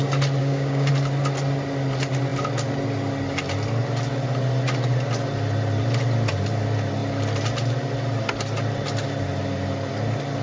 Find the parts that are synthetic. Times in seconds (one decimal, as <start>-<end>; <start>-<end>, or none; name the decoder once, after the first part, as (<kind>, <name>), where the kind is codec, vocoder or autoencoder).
0.4-0.9 (codec, DAC)